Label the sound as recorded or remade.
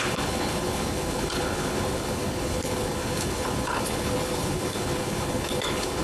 remade